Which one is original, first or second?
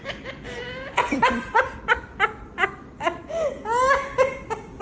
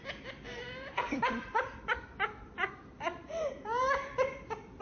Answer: first